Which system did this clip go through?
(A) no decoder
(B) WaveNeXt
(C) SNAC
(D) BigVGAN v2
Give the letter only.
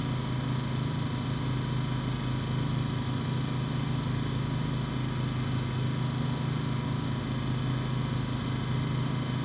A